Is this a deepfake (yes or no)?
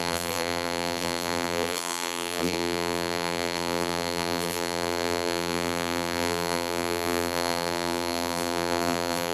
yes